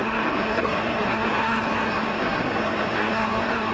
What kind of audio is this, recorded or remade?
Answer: remade